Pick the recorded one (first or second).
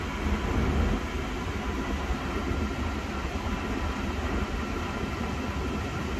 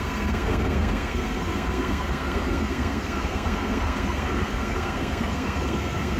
first